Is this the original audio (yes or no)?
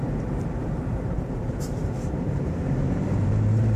no